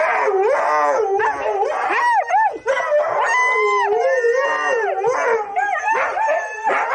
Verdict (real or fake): real